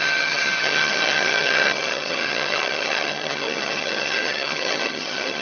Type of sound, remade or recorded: remade